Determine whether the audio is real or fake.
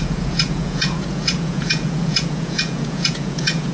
fake